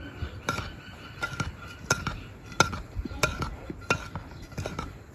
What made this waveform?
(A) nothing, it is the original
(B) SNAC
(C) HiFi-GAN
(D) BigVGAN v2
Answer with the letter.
A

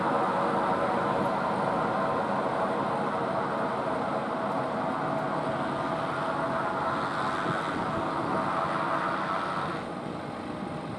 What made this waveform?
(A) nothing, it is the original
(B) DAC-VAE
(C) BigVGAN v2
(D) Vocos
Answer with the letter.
A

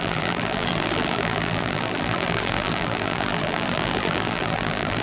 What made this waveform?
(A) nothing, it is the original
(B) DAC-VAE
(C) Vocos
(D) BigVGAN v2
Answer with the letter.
D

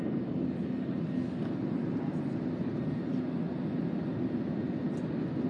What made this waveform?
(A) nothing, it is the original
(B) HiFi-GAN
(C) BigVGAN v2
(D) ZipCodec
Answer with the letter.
A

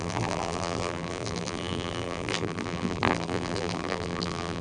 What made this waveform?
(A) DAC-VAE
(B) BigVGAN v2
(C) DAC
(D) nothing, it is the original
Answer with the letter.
B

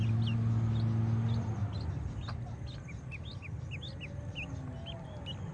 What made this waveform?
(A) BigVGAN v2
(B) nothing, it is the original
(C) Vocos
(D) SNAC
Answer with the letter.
B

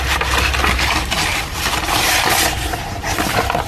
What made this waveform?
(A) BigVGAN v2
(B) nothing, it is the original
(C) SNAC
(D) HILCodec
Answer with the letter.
A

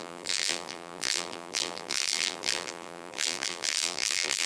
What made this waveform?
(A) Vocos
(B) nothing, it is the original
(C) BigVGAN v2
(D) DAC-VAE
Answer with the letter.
C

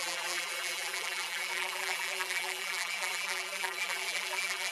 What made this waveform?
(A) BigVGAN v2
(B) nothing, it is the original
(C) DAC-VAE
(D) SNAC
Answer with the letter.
A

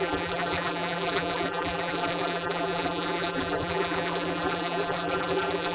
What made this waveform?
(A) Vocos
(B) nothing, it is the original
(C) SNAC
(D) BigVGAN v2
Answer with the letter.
D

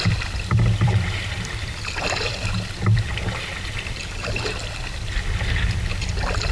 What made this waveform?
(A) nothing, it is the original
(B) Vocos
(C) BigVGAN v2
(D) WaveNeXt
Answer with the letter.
C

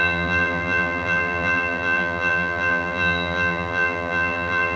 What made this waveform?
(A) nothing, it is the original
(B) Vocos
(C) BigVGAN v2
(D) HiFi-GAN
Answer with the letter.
C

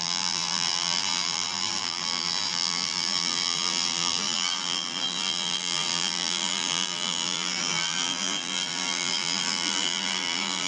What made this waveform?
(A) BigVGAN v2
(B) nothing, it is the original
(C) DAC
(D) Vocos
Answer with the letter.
A